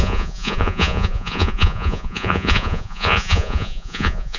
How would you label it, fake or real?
fake